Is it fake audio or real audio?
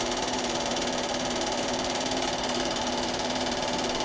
fake